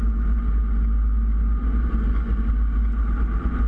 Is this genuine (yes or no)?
yes